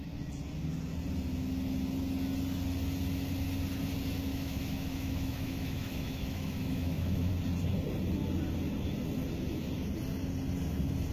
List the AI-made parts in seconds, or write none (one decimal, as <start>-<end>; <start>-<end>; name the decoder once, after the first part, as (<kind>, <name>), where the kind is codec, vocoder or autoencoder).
4.3-7.3 (autoencoder, DAC-VAE)